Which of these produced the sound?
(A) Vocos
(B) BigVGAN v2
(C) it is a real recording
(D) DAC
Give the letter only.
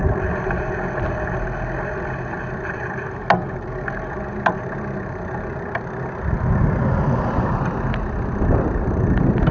C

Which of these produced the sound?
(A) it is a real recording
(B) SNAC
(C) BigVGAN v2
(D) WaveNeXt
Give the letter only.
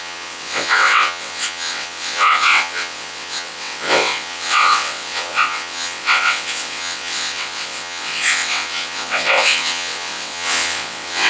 D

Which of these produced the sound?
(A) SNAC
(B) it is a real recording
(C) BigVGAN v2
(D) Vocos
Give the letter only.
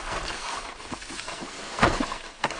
A